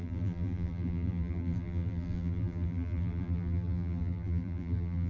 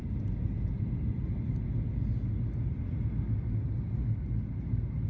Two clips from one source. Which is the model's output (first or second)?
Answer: first